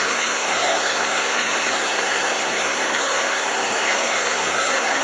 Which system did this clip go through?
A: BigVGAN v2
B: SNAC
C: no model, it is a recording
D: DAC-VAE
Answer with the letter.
B